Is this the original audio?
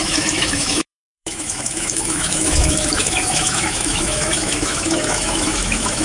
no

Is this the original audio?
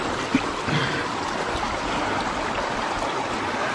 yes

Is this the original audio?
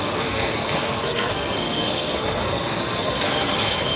no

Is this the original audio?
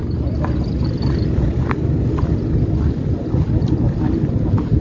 yes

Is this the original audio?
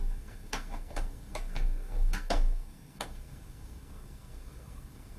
no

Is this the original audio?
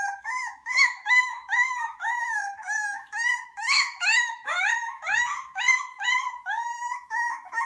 no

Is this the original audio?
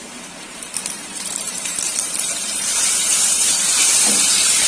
no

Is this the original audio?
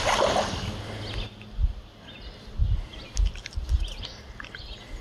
yes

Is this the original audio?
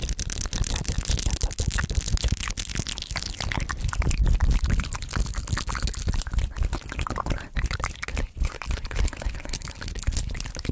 yes